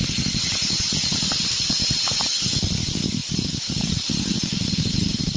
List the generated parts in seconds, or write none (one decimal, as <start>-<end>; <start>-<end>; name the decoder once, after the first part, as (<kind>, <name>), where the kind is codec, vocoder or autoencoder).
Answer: 1.0-2.0 (vocoder, BigVGAN v2); 3.2-3.9